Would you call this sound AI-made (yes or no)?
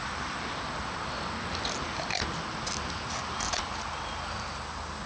no